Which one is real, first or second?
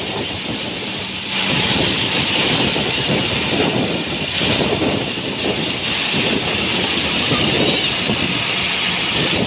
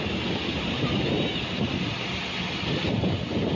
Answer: second